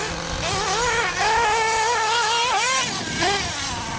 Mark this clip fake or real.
real